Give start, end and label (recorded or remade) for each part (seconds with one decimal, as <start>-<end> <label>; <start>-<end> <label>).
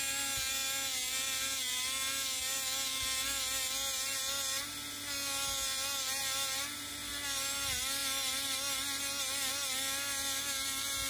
0.0-11.1 recorded